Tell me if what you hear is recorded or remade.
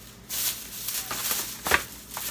recorded